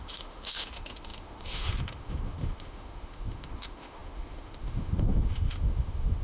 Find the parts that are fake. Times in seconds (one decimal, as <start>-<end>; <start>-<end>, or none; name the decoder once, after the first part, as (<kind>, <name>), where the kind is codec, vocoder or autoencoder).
0.0-6.2 (autoencoder, DAC-VAE)